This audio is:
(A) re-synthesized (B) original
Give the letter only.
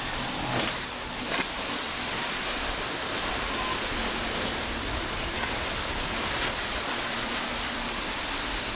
B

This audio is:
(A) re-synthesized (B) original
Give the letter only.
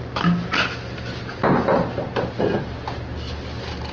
B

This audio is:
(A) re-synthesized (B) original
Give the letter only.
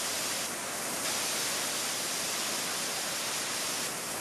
B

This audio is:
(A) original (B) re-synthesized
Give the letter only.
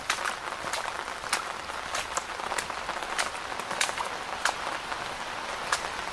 A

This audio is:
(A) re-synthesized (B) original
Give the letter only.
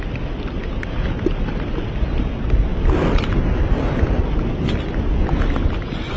B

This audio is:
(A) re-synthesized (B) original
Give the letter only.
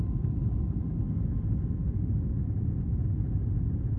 B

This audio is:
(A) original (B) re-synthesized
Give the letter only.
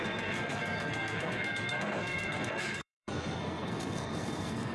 B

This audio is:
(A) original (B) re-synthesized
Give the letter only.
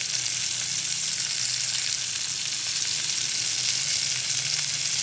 A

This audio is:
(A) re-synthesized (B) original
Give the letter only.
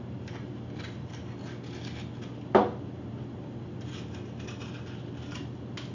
B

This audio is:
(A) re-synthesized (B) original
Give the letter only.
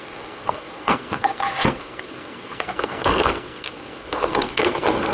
A